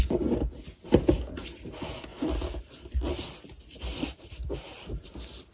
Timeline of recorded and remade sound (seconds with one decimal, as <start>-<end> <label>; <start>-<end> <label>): 0.0-5.5 recorded